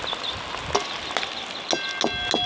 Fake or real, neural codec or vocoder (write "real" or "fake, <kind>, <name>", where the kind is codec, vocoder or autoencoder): real